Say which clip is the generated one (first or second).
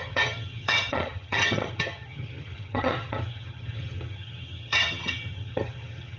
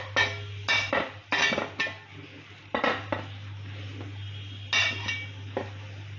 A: first